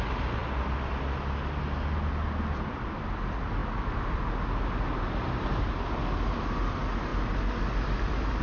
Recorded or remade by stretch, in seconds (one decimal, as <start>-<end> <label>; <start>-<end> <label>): 0.0-8.4 recorded